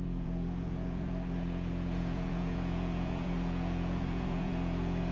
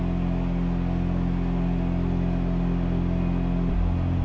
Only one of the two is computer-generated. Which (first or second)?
first